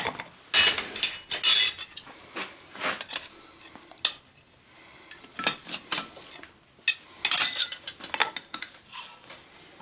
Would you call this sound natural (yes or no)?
yes